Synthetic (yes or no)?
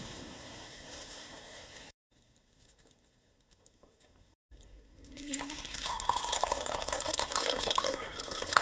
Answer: yes